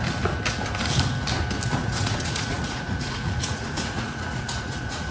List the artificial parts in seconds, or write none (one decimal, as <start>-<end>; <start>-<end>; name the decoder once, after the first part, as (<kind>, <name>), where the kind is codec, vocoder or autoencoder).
1.8-5.1 (vocoder, Vocos)

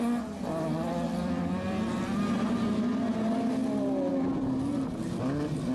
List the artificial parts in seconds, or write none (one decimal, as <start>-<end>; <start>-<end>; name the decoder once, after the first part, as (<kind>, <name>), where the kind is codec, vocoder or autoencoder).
none

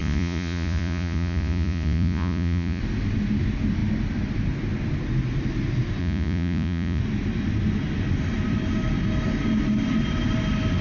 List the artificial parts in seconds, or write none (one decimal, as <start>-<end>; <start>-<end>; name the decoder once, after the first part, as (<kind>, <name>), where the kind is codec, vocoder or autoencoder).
0.0-2.8 (vocoder, Vocos); 6.0-7.0

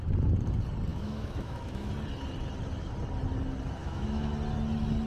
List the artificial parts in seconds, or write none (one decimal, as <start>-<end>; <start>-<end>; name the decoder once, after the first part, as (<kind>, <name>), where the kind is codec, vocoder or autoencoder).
0.9-1.9 (autoencoder, DAC-VAE); 3.8-4.3

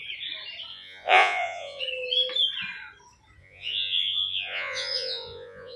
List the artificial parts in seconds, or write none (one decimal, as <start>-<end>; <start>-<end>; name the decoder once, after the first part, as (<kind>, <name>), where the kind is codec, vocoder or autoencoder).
0.7-1.8 (vocoder, Vocos); 3.4-5.8

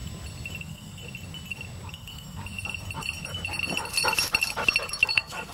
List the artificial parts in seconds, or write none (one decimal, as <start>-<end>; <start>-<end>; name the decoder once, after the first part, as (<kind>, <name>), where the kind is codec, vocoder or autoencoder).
0.6-1.0 (codec, SNAC); 1.9-2.4; 5.1-5.5

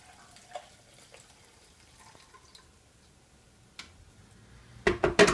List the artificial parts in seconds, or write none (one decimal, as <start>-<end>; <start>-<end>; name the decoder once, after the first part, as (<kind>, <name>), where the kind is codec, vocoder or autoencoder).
none

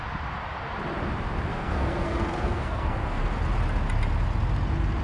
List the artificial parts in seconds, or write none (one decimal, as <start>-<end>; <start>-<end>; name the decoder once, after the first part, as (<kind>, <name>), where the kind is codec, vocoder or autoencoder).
1.5-3.2 (codec, SNAC)